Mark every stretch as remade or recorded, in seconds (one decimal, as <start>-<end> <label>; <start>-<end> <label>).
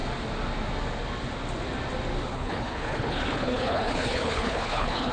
0.0-2.3 recorded; 2.3-5.1 remade